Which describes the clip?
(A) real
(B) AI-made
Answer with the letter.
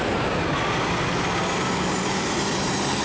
A